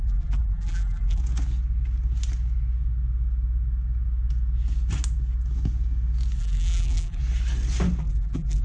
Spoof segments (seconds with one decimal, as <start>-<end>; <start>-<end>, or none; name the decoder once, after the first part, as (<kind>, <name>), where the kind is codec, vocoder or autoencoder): 0.0-1.2 (vocoder, BigVGAN v2); 6.4-7.2; 8.0-8.6